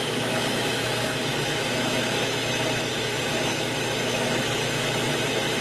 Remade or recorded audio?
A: remade